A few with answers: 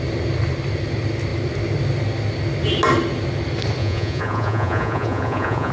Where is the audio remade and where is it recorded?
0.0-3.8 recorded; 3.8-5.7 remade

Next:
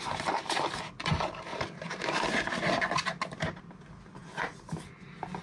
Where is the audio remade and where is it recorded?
0.0-5.4 recorded

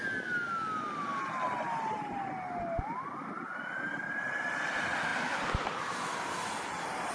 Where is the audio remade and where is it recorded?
0.0-5.1 recorded; 5.1-5.8 remade; 5.8-7.1 recorded

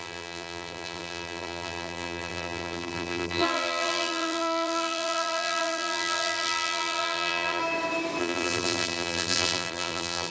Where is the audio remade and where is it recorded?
0.0-7.6 remade; 7.6-8.2 recorded; 8.2-10.3 remade

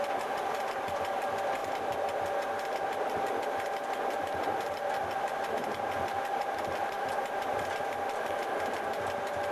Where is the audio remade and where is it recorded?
0.0-9.5 recorded